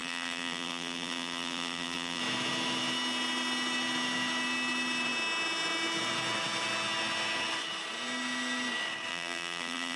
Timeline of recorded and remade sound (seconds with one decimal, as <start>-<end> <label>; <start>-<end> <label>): 0.0-2.2 remade; 2.2-9.1 recorded; 9.1-10.0 remade